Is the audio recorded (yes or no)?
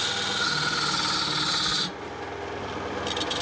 yes